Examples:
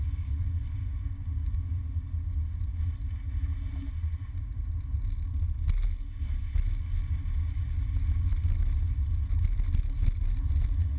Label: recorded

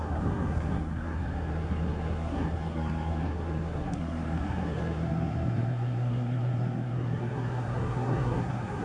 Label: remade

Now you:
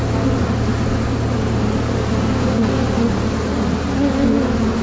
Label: recorded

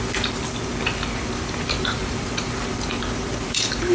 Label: remade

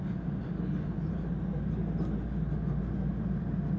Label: recorded